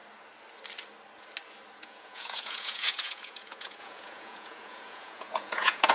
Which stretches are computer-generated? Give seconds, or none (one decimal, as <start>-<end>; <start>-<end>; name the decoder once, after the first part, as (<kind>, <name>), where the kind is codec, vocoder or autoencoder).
1.8-5.9 (vocoder, Vocos)